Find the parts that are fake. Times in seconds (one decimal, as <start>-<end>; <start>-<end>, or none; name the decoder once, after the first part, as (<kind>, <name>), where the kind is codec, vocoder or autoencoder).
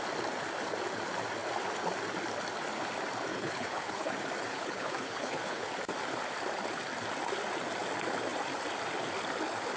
3.3-4.1 (codec, HILCodec); 4.5-5.7